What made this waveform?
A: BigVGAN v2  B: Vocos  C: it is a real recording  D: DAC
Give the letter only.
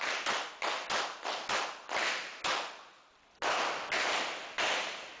C